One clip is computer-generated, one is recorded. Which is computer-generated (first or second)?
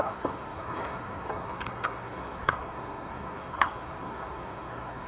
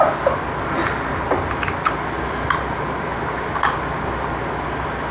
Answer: first